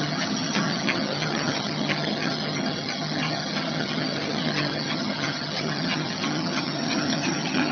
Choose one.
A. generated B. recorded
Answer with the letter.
A